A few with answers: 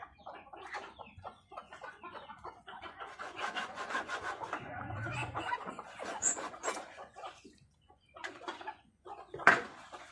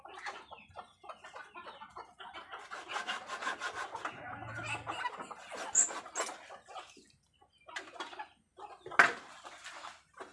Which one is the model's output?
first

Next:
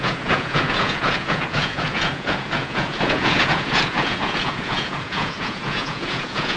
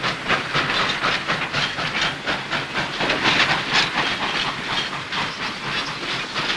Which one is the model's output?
first